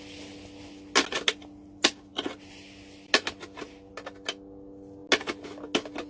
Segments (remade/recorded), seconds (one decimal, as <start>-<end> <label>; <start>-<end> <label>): 0.0-6.1 recorded